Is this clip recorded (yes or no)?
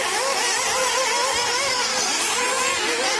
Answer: yes